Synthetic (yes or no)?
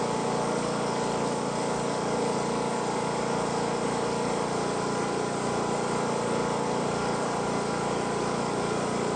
yes